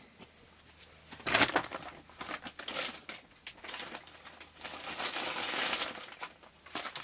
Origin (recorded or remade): recorded